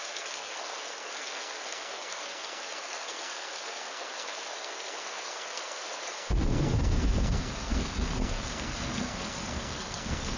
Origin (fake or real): fake